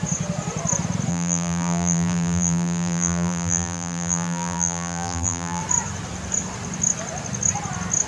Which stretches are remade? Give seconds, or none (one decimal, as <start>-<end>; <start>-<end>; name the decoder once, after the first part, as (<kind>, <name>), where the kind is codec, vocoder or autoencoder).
1.1-5.6 (vocoder, BigVGAN v2)